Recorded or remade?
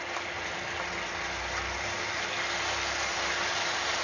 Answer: recorded